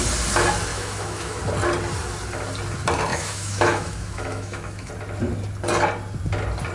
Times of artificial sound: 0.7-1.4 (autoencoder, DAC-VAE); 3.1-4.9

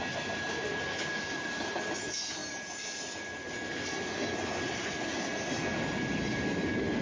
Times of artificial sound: none

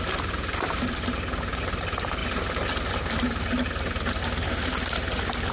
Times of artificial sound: none

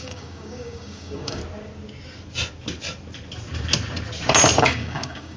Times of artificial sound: 0.0-1.4 (codec, DAC); 4.6-5.4

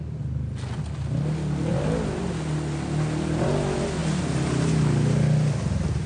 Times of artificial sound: none

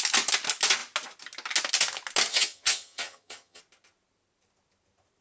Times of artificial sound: 2.3-3.6 (vocoder, HiFi-GAN)

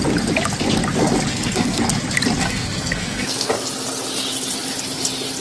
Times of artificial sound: 1.3-1.8 (codec, SNAC); 2.4-3.5

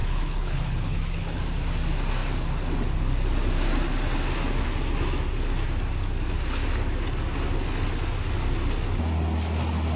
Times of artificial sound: 0.0-1.4 (codec, HILCodec)